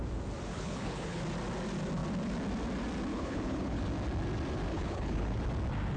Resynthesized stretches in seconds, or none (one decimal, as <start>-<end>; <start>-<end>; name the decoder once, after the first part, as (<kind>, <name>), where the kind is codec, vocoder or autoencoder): 0.5-1.2 (codec, HILCodec); 3.1-3.8; 4.7-5.4